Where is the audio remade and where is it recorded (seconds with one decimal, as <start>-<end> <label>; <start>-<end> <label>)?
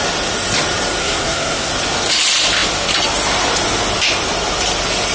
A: 0.0-1.0 recorded; 1.0-1.7 remade; 1.7-5.1 recorded